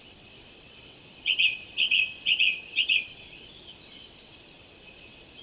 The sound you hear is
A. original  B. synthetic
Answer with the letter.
B